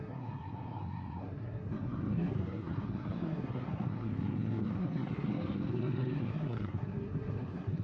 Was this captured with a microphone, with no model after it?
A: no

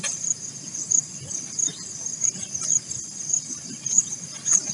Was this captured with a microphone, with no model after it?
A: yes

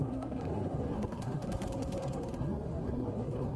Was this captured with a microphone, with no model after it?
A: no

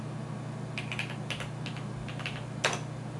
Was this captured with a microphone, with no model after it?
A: yes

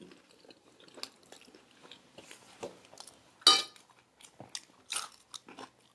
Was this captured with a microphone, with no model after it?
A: yes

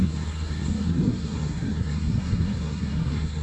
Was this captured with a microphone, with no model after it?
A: no